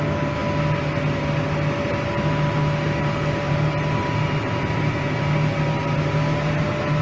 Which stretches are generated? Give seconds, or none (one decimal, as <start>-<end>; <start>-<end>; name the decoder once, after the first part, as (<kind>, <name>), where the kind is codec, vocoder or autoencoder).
none